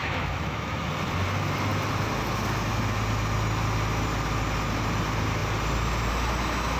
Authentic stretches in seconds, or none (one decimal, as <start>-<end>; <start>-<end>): 0.9-6.8